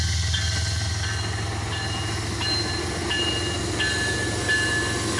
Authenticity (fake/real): real